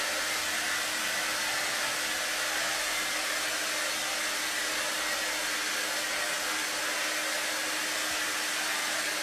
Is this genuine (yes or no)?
yes